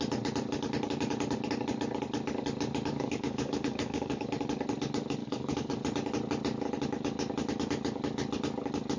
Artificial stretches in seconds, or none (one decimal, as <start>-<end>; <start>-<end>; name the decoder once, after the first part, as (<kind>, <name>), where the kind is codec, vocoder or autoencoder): 2.9-4.3 (codec, DAC); 5.2-5.7